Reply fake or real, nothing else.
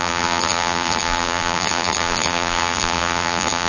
fake